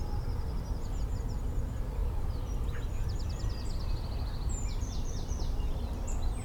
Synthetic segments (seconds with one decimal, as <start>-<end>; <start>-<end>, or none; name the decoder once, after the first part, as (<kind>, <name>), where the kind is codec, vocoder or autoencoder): none